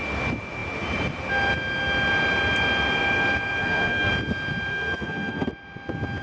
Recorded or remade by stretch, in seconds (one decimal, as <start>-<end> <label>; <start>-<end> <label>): 0.0-3.6 recorded; 3.6-4.1 remade; 4.1-4.7 recorded; 4.7-5.5 remade; 5.5-6.2 recorded